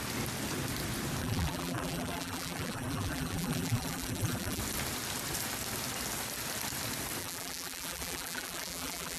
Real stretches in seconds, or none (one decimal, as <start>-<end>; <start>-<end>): 0.0-1.2; 4.6-7.2